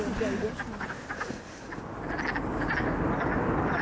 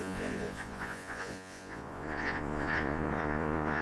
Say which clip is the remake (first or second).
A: second